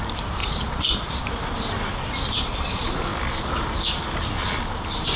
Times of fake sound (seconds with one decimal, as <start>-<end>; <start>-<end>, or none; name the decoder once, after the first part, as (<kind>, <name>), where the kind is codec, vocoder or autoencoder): 0.4-1.2 (vocoder, Vocos)